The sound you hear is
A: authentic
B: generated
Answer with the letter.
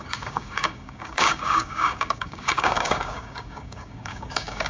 B